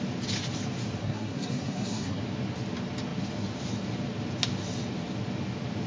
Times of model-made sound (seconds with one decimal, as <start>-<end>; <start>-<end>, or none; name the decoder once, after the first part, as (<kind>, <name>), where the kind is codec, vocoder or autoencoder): 1.0-2.2 (codec, SNAC)